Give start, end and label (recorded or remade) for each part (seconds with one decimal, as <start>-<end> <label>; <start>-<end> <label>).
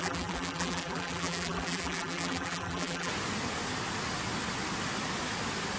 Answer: 0.0-3.1 remade; 3.1-5.8 recorded